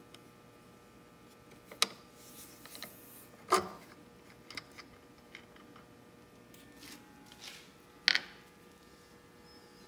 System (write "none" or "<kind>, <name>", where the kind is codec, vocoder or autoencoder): none